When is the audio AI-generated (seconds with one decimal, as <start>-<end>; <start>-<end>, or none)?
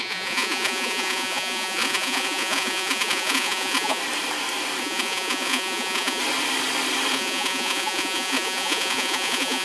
0.0-4.0; 4.8-6.2; 7.1-9.6